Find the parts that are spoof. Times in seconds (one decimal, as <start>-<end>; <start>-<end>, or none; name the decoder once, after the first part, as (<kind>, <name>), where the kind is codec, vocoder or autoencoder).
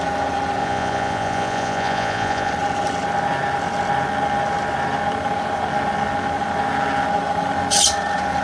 0.6-2.5 (vocoder, Vocos)